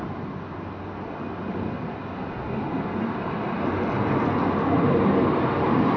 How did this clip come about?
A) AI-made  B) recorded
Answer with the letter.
B